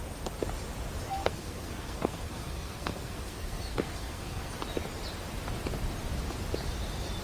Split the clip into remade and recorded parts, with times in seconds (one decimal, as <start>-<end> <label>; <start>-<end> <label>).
0.0-1.1 recorded; 1.1-4.5 remade; 4.5-7.2 recorded